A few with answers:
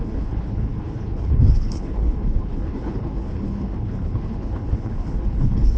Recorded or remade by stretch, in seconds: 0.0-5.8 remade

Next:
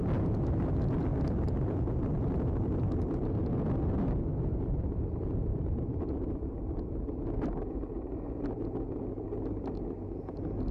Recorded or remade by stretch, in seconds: 0.0-1.1 recorded; 1.1-2.3 remade; 2.3-4.5 recorded; 4.5-5.1 remade; 5.1-5.5 recorded; 5.5-9.7 remade; 9.7-10.7 recorded

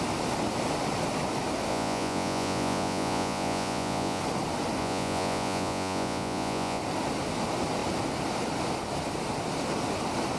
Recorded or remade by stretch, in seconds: 0.0-1.7 recorded; 1.7-4.2 remade; 4.2-4.8 recorded; 4.8-6.8 remade; 6.8-10.4 recorded

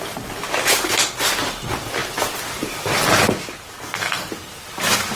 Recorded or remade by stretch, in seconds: 0.0-3.8 recorded; 3.8-4.3 remade; 4.3-5.2 recorded

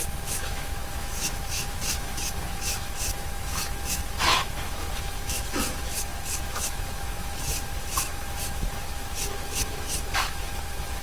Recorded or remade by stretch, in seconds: 0.0-11.0 remade

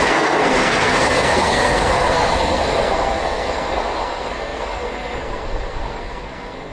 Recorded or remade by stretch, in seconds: 0.0-6.7 remade